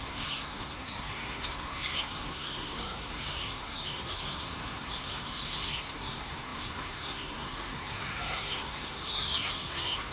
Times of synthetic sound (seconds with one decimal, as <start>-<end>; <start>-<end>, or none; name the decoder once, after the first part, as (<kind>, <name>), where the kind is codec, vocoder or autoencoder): 0.0-10.1 (codec, SNAC)

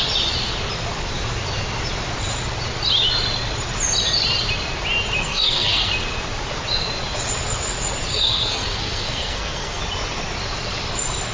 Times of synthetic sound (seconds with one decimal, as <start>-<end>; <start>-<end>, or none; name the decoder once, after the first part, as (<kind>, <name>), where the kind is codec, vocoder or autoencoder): 5.2-5.9 (codec, SNAC); 8.1-9.8

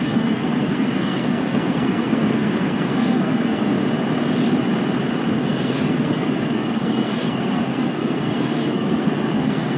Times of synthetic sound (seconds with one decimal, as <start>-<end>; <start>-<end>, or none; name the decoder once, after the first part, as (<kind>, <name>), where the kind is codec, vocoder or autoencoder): 0.0-3.7 (codec, SNAC); 5.3-9.8

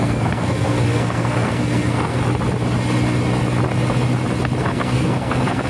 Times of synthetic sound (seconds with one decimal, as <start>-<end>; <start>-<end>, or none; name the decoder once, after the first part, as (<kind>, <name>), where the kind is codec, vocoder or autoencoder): 0.0-2.2 (codec, SNAC); 4.6-5.7

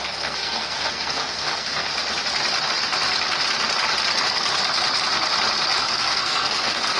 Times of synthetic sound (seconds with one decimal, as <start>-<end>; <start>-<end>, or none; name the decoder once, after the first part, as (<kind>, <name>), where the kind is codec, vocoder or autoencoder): 0.0-1.9 (codec, SNAC); 5.8-7.0

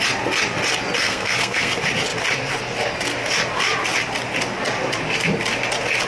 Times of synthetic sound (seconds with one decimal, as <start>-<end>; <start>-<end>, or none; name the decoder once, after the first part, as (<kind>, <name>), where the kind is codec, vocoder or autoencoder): 1.0-1.7 (codec, SNAC)

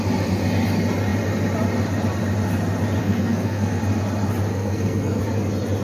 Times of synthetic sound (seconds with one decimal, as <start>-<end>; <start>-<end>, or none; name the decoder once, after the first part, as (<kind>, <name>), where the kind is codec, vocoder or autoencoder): 3.0-3.8 (codec, SNAC); 4.5-5.2